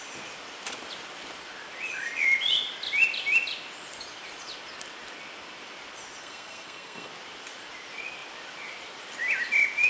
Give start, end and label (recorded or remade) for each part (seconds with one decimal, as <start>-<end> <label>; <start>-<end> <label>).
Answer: 0.0-6.2 recorded; 6.2-7.1 remade; 7.1-9.9 recorded